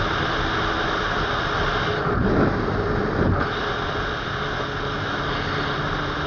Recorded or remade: recorded